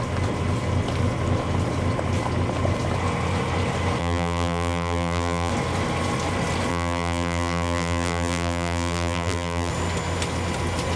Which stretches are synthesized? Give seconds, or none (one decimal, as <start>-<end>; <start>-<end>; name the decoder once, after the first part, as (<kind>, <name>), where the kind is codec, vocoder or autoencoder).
4.0-5.5 (vocoder, BigVGAN v2); 6.7-9.7